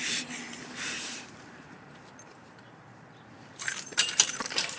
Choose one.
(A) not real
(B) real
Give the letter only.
A